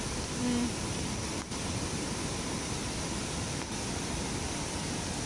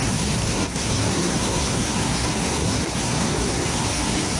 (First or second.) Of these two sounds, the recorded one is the first